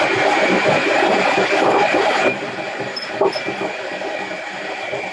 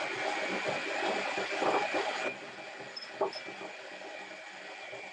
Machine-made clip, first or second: first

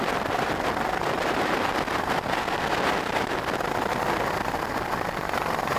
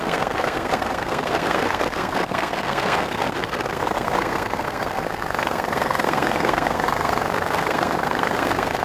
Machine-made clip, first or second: second